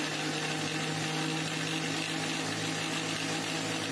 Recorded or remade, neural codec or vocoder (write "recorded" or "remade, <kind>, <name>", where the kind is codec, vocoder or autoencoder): recorded